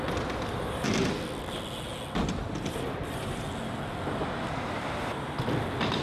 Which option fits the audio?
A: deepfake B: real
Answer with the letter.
B